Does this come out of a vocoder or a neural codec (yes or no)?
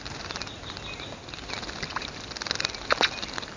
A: no